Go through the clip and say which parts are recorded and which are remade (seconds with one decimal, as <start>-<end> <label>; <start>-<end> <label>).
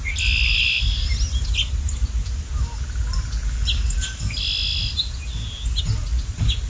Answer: 0.0-6.7 recorded